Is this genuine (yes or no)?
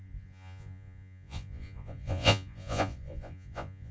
no